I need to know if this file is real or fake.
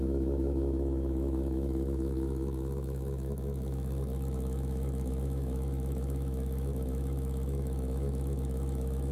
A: fake